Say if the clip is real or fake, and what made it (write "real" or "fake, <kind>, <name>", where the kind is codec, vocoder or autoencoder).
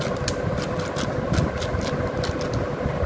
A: real